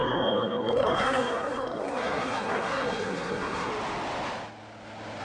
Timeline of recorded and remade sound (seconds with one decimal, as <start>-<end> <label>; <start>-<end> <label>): 0.0-3.7 remade; 3.7-5.2 recorded